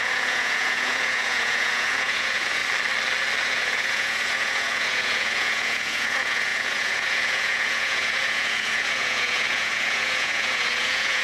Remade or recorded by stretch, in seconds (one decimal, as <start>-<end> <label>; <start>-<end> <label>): 0.0-2.6 remade; 2.6-3.4 recorded; 3.4-11.2 remade